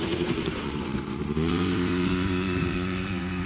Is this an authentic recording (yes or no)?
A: no